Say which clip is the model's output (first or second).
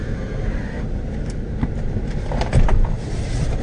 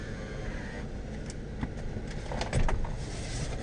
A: first